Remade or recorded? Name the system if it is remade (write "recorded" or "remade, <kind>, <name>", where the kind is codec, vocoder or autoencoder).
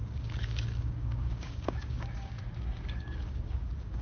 remade, codec, DAC